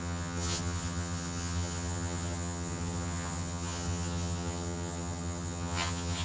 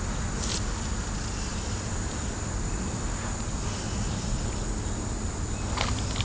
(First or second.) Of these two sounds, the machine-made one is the first